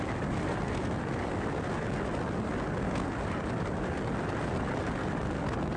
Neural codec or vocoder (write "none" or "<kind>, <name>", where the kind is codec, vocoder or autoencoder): none